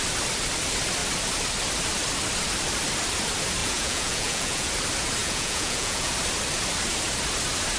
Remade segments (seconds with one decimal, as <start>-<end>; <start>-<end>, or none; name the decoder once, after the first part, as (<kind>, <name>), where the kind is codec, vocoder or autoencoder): 3.6-4.7 (vocoder, Vocos); 5.2-6.1